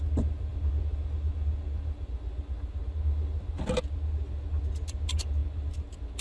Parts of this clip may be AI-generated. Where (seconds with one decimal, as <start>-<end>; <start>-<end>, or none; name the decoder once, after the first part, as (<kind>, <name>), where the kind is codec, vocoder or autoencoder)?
none